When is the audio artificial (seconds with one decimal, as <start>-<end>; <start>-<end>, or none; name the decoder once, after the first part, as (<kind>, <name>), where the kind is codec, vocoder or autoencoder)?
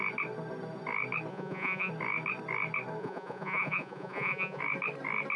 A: 1.3-1.9 (vocoder, Vocos); 3.0-4.6